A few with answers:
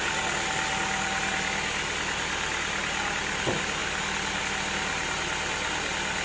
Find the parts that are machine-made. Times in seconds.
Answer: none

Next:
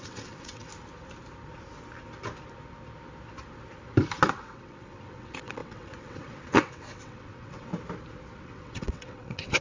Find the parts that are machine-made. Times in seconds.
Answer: 0.0-0.7 (vocoder, WaveNeXt); 4.3-7.7; 8.4-9.6